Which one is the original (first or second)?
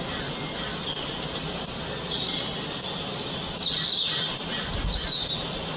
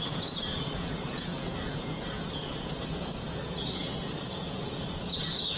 first